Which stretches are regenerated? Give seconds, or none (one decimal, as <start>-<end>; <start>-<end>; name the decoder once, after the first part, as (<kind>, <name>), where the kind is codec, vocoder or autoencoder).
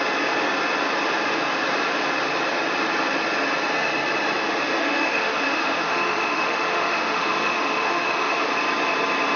4.8-8.5 (autoencoder, DAC-VAE)